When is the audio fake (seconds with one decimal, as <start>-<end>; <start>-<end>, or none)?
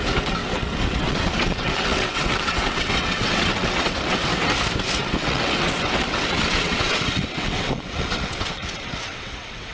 0.0-4.3; 5.0-9.7